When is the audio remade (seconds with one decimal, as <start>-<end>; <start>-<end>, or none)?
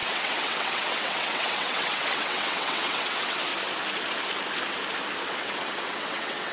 0.0-3.5; 5.4-6.5